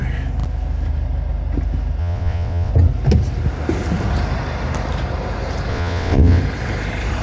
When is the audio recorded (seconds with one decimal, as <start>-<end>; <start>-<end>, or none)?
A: 0.0-2.0; 2.7-5.7; 6.4-7.2